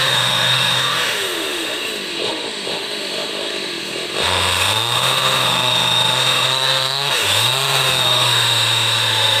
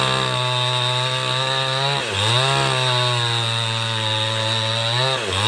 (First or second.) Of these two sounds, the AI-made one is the first